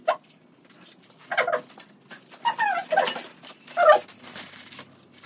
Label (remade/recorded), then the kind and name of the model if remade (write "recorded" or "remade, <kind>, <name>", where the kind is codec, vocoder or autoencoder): recorded